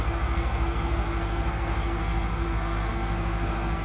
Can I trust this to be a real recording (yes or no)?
no